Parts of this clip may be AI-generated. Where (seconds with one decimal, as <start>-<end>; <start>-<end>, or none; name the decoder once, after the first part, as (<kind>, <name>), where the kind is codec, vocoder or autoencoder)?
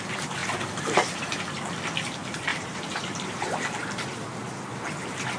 0.4-1.4 (vocoder, BigVGAN v2); 2.5-3.6